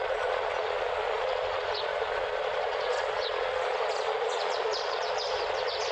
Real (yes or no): no